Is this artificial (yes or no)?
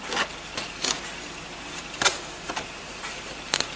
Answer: no